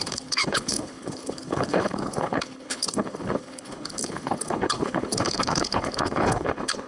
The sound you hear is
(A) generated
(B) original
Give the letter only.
A